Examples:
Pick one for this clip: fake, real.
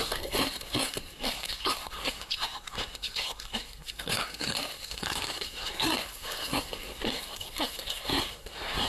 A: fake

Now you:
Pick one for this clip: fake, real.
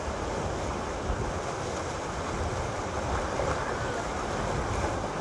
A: real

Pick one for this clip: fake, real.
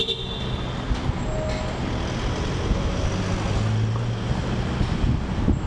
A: real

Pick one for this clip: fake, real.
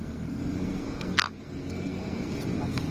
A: fake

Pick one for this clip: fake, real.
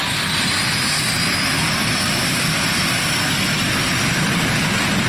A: real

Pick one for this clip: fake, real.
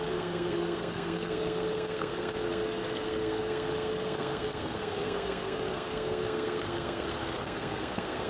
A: fake